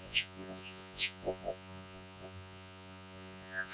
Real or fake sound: fake